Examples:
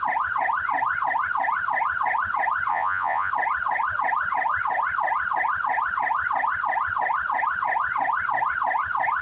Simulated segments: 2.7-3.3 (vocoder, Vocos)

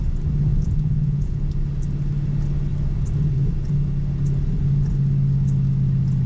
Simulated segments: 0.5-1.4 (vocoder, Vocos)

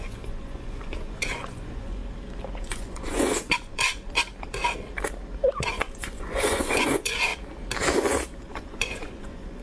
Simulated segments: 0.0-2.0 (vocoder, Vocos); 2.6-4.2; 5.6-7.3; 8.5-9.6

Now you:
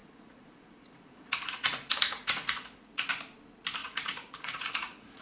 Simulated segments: 0.0-3.1 (vocoder, Vocos); 3.8-5.2

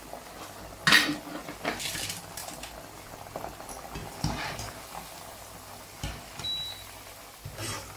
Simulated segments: none

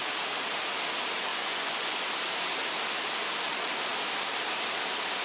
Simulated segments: 1.3-2.0 (vocoder, Vocos)